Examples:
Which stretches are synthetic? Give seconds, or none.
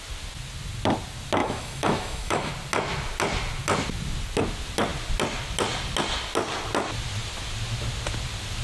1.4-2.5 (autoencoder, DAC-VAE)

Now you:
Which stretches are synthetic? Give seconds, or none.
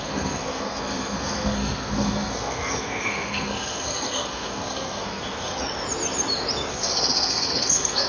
0.0-5.6 (codec, SNAC); 6.7-8.1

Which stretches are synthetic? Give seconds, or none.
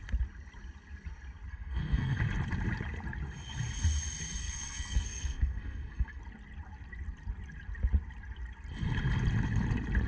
1.5-2.2 (codec, SNAC); 4.4-6.2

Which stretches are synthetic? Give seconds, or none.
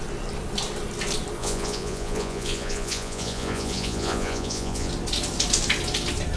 1.4-4.9 (vocoder, Vocos)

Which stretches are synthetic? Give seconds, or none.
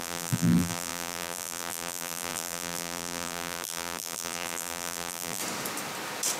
0.0-5.4 (vocoder, BigVGAN v2)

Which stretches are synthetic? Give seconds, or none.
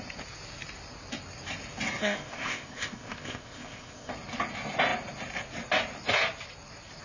2.0-4.1 (codec, ZipCodec)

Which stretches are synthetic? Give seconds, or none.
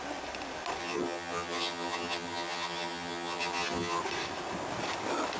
0.8-4.0 (vocoder, HiFi-GAN)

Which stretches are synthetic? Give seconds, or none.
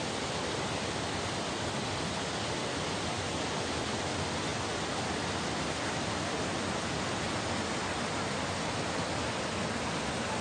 none